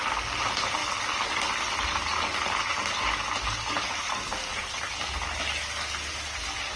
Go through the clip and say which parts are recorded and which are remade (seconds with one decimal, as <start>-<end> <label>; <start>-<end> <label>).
0.0-6.8 recorded